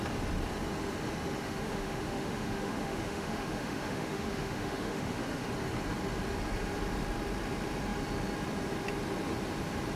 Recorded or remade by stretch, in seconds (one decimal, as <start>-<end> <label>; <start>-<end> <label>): 0.0-1.4 recorded; 1.4-5.5 remade; 5.5-10.0 recorded